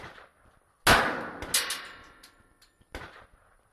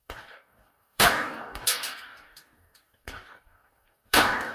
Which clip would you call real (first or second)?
first